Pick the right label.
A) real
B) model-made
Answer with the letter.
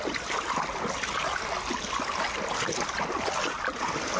A